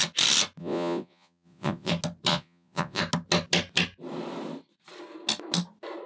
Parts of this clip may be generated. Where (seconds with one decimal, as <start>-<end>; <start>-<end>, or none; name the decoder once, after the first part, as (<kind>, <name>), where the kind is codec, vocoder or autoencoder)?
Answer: 0.6-1.9 (vocoder, Vocos); 2.3-3.0